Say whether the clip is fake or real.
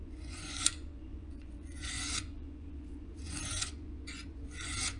fake